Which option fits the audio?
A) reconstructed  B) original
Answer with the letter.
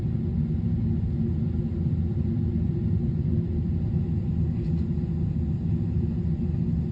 B